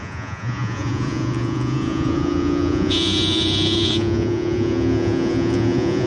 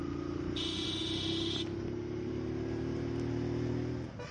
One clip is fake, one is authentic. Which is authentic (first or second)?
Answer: second